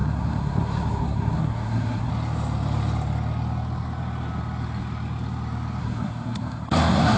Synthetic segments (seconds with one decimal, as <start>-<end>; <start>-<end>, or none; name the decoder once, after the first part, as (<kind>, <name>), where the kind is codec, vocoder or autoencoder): 0.0-2.1 (codec, SNAC); 5.8-7.2

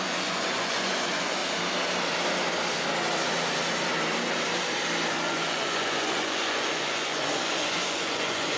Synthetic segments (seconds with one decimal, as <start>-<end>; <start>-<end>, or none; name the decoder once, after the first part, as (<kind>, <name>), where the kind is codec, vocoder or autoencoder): 0.0-1.4 (vocoder, Vocos); 5.1-8.6

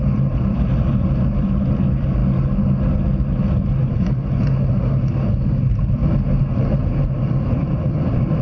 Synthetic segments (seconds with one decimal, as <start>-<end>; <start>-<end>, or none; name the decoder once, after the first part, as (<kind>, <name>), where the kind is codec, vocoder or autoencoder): none